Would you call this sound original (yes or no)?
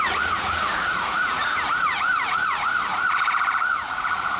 no